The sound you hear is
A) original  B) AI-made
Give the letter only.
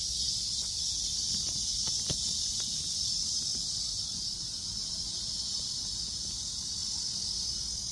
A